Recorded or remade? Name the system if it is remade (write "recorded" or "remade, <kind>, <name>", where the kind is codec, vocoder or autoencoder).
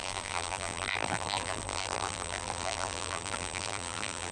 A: remade, vocoder, BigVGAN v2